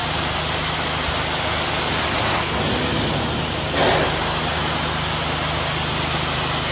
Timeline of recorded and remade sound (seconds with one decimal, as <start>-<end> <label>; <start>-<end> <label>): 0.0-6.7 recorded